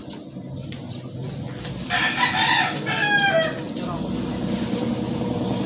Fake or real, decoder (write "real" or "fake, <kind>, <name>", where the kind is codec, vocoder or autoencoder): real